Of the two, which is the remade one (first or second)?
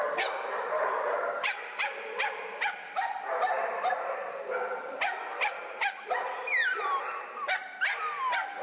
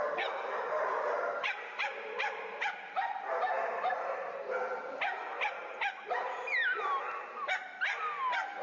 first